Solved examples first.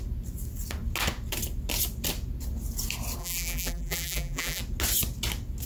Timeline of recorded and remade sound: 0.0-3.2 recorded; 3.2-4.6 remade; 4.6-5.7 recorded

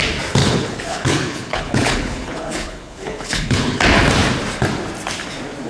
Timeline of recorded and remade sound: 0.0-0.4 recorded; 0.4-3.8 remade; 3.8-5.7 recorded

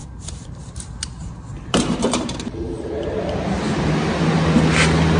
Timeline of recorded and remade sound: 0.0-2.8 remade; 2.8-5.2 recorded

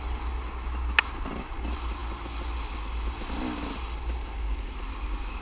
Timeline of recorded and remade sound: 0.0-5.4 recorded

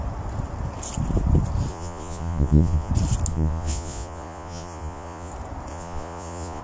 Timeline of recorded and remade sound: 0.0-1.7 recorded; 1.7-2.9 remade; 2.9-3.3 recorded; 3.3-5.3 remade; 5.3-5.7 recorded; 5.7-6.6 remade

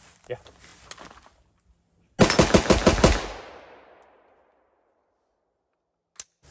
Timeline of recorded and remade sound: 0.0-6.5 recorded